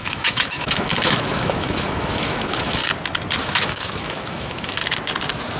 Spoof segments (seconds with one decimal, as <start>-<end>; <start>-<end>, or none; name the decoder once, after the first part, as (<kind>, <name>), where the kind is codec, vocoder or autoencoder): 0.0-2.8 (autoencoder, DAC-VAE); 3.4-4.8